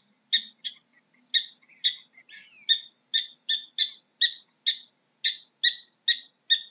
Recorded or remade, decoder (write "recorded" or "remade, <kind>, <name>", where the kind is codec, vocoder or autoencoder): recorded